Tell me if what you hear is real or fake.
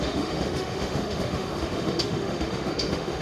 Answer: fake